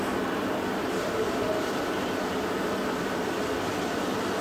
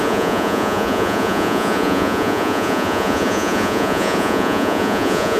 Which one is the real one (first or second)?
first